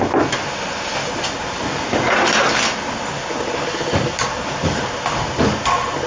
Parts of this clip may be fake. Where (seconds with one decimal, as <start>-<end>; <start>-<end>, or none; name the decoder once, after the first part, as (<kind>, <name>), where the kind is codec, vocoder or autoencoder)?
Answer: none